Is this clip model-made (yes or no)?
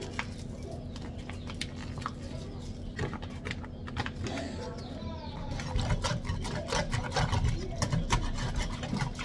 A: no